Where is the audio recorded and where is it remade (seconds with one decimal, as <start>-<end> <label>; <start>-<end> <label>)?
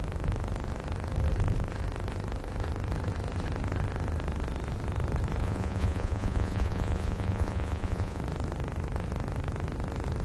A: 0.0-5.4 recorded; 5.4-8.2 remade; 8.2-10.2 recorded